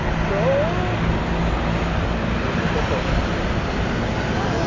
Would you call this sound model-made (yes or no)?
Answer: no